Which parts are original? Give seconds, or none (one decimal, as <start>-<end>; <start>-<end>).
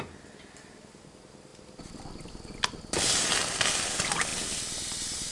0.0-5.3